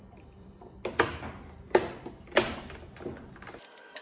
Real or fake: real